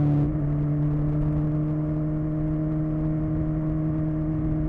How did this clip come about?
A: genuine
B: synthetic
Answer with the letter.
A